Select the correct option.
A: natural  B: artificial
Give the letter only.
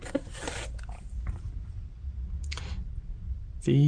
A